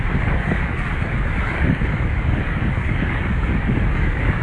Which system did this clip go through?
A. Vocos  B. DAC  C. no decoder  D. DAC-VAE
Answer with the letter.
B